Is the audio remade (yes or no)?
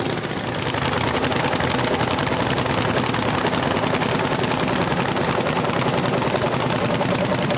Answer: no